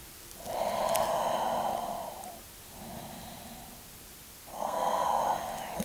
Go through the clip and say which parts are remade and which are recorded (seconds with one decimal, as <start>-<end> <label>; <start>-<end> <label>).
0.0-4.5 recorded; 4.5-5.2 remade; 5.2-5.8 recorded